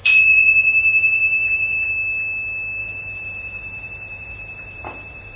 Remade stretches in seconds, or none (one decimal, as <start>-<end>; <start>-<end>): 0.0-1.9; 2.8-5.4